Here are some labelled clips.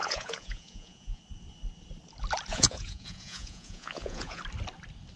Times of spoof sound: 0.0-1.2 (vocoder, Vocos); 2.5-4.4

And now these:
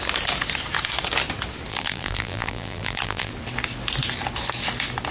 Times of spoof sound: 1.7-3.3 (vocoder, BigVGAN v2)

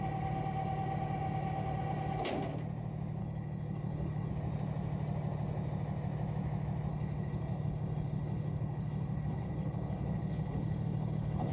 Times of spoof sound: 3.2-4.3 (codec, HILCodec); 6.9-11.5

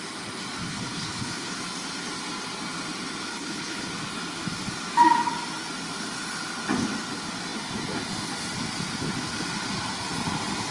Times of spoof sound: 0.7-1.5 (codec, HILCodec); 3.3-3.9

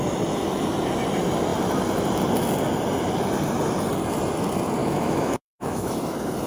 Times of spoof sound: 4.8-6.0 (autoencoder, DAC-VAE)

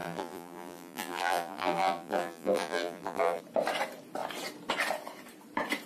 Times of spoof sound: 0.0-3.4 (vocoder, BigVGAN v2)

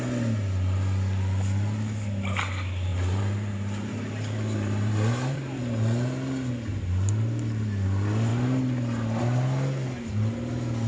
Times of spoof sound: 2.9-5.6 (vocoder, BigVGAN v2)